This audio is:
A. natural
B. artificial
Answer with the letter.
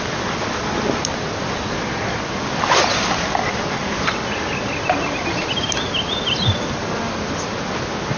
A